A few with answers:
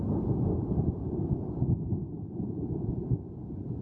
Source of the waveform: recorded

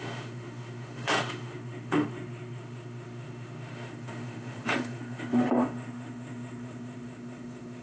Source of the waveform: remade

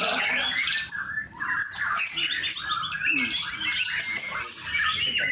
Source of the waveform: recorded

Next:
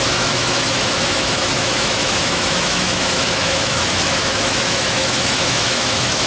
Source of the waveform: remade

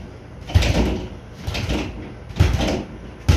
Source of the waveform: recorded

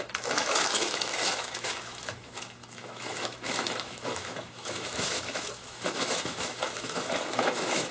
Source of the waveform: remade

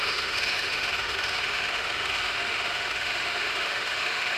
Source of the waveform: remade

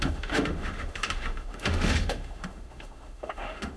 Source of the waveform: remade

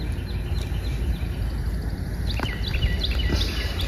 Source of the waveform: recorded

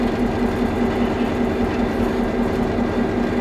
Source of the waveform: recorded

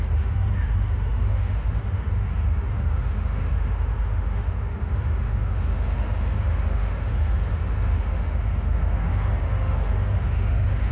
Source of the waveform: remade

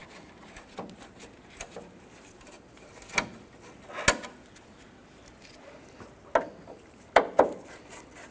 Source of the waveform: recorded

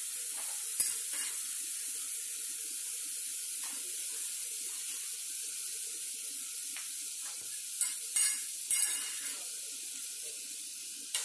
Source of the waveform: recorded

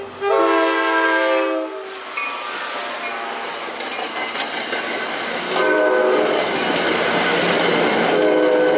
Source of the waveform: recorded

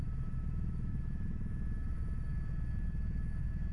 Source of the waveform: remade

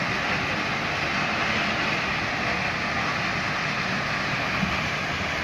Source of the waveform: recorded